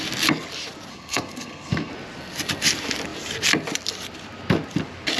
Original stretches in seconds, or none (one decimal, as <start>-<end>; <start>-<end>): 0.0-0.9; 1.9-5.2